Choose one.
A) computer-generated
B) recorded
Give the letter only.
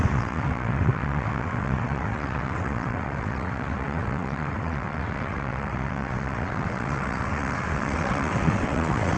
A